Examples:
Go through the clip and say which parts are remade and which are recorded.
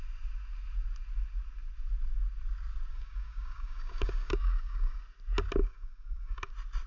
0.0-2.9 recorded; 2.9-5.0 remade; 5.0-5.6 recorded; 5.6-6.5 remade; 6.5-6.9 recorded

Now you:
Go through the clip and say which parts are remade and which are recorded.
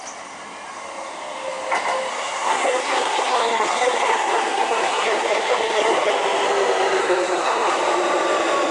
0.0-2.1 recorded; 2.1-6.1 remade; 6.1-7.0 recorded; 7.0-7.8 remade; 7.8-8.7 recorded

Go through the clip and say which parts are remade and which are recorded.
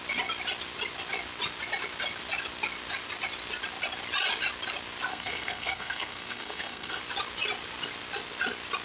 0.0-5.1 recorded; 5.1-7.0 remade; 7.0-8.8 recorded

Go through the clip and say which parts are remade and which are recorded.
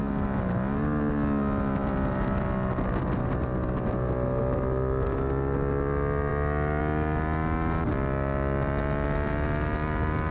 0.0-1.8 recorded; 1.8-2.4 remade; 2.4-10.3 recorded